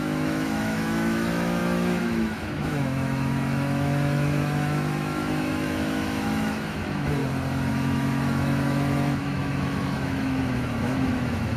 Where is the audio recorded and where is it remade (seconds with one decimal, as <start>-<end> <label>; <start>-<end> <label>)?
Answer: 0.0-7.2 remade; 7.2-7.7 recorded; 7.7-11.6 remade